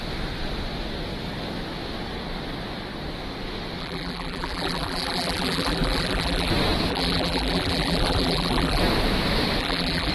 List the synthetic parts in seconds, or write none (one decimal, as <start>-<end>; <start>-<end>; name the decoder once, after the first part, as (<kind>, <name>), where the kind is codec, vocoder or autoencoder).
3.8-6.5 (vocoder, BigVGAN v2); 6.9-8.8; 9.6-10.1